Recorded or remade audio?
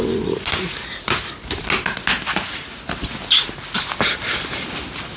recorded